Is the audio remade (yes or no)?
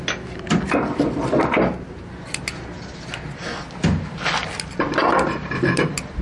no